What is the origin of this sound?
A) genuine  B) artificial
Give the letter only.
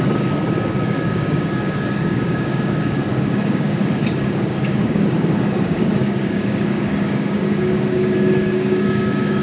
B